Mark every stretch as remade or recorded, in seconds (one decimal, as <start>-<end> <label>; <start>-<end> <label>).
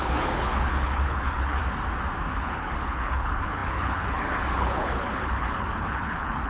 0.0-1.6 remade; 1.6-2.4 recorded; 2.4-6.5 remade